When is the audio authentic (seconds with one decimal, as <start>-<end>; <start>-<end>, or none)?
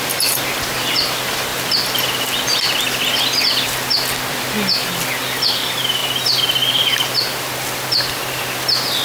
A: 0.0-9.0